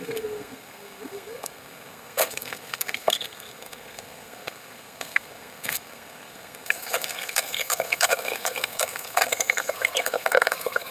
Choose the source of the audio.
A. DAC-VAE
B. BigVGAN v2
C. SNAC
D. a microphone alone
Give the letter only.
C